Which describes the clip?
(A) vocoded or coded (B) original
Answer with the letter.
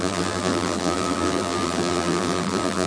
A